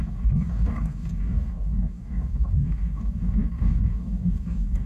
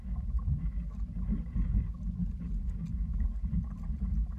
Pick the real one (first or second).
second